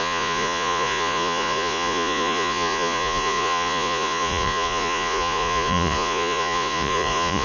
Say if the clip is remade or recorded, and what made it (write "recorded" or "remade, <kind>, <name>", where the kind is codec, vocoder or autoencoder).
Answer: remade, vocoder, Vocos